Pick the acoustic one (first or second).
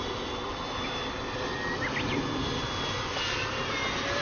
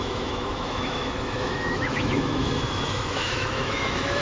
first